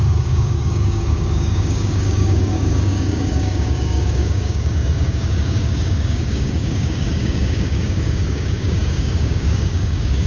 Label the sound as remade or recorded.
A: remade